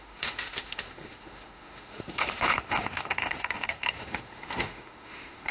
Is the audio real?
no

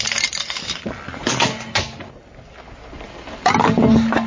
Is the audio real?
yes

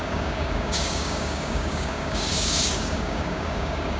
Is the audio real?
no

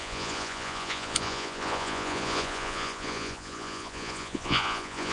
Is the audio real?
no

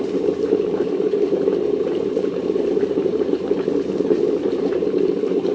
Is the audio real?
no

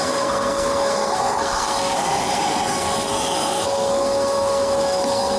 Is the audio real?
no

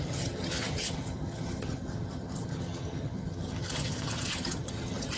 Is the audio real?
no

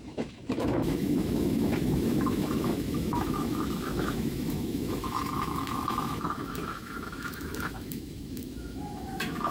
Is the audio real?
no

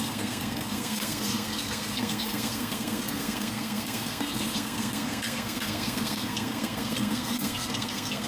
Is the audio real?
no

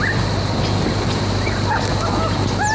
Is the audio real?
yes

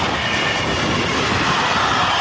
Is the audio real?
yes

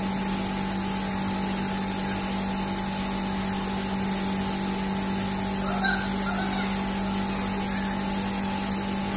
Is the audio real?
yes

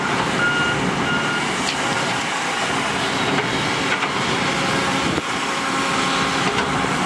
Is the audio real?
yes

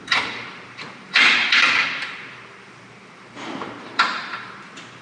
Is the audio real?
no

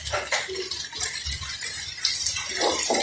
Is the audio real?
yes